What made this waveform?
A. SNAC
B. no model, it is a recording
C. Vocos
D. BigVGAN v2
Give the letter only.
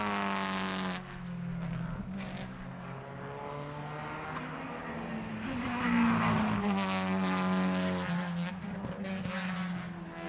B